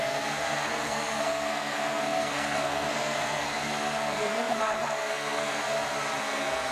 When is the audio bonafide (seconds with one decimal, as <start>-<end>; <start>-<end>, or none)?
5.6-6.2